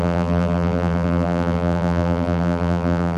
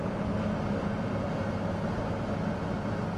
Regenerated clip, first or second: first